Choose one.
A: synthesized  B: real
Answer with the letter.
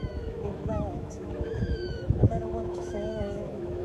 A